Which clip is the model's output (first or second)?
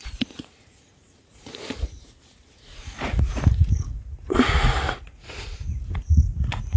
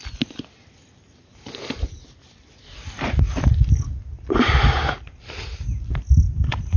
first